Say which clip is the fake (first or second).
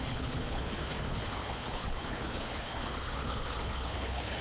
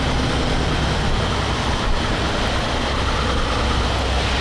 first